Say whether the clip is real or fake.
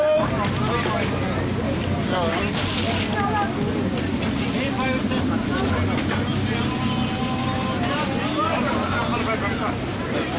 real